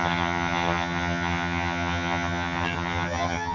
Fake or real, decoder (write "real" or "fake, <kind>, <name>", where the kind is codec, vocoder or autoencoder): fake, vocoder, HiFi-GAN